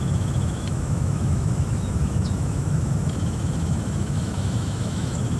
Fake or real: fake